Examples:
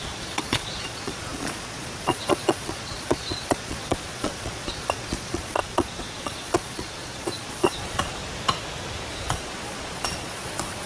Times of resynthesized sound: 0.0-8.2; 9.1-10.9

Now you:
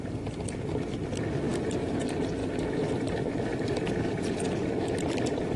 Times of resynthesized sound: 1.5-2.0; 2.4-2.9; 3.5-5.6

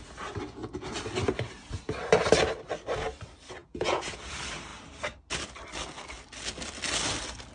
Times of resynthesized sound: 3.6-4.2

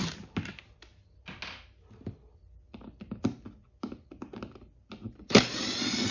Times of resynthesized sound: none

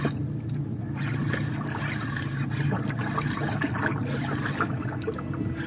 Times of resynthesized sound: none

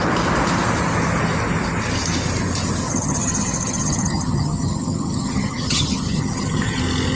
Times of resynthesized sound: 2.8-6.8

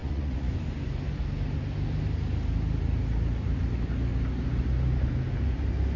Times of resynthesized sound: 0.0-0.5